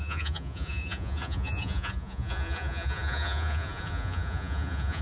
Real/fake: fake